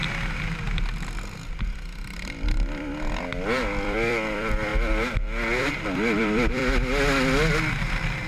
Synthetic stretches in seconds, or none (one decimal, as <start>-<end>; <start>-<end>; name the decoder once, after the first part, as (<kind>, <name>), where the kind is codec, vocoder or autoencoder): 3.2-4.7 (vocoder, BigVGAN v2); 5.6-6.6